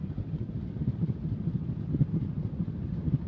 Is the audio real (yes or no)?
yes